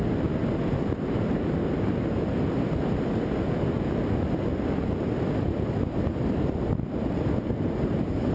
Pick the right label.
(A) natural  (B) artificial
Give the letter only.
A